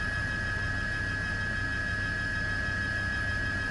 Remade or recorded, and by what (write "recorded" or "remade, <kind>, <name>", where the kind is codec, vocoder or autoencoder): recorded